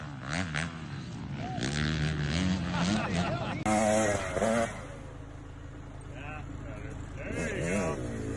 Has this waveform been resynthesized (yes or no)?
no